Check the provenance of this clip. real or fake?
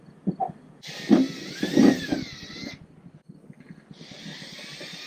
real